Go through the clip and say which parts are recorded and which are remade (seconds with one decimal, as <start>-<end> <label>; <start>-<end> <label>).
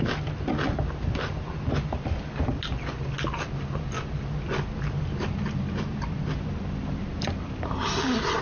0.0-8.4 recorded